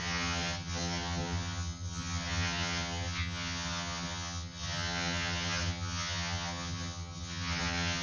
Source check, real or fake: fake